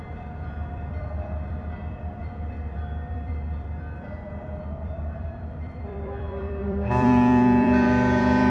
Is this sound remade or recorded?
remade